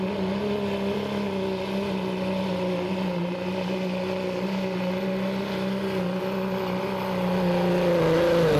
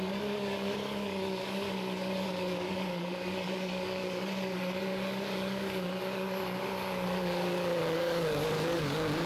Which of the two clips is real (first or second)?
first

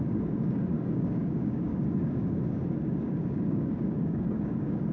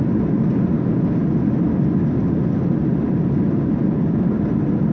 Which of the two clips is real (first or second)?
second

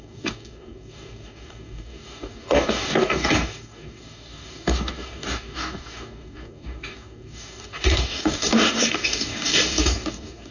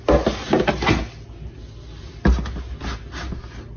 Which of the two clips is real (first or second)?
second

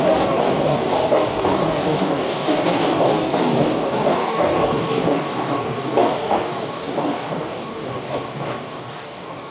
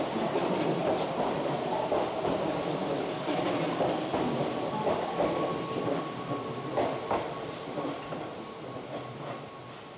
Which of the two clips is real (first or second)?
second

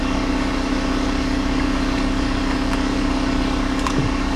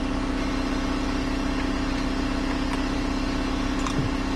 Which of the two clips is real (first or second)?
second